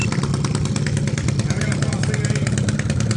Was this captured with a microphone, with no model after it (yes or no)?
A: yes